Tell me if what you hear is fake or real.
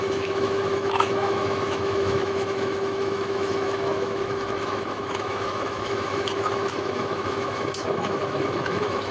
fake